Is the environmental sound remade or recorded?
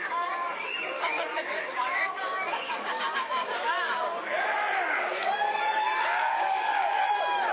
remade